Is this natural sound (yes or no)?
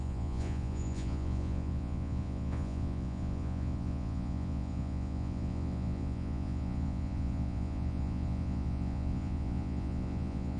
no